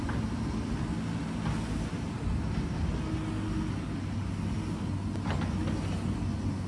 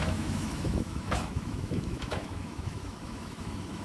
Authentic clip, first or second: first